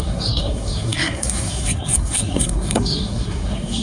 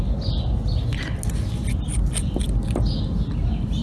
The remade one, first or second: first